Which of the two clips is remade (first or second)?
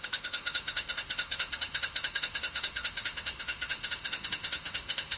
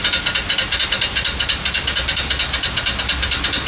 first